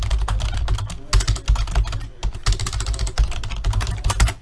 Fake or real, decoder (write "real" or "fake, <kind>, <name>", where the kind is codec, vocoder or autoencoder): real